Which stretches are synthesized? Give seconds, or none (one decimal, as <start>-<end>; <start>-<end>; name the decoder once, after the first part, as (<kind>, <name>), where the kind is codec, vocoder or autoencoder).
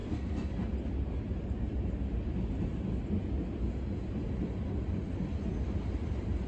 0.0-0.5 (codec, SNAC)